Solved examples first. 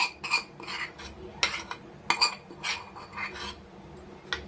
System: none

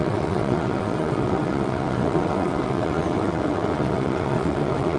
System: vocoder, WaveNeXt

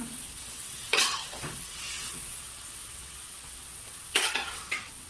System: vocoder, WaveNeXt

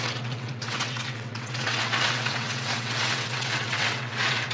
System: vocoder, WaveNeXt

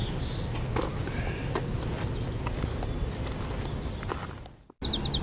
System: none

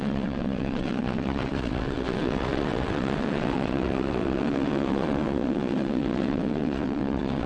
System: vocoder, WaveNeXt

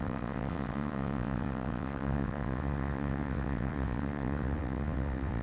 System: vocoder, WaveNeXt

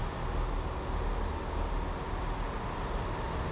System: none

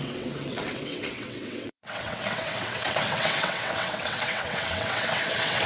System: vocoder, WaveNeXt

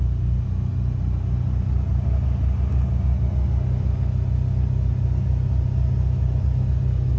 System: none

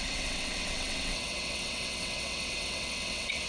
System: vocoder, WaveNeXt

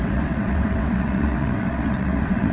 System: vocoder, WaveNeXt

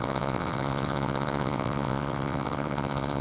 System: vocoder, WaveNeXt